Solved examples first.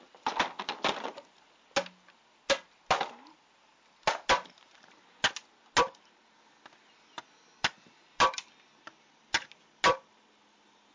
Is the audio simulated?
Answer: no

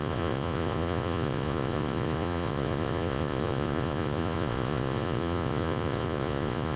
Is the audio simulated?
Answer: yes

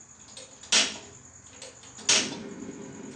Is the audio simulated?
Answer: no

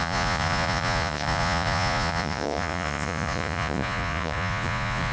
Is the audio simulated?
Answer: yes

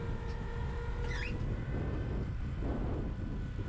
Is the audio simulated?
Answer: no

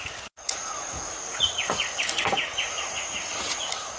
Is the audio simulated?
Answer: yes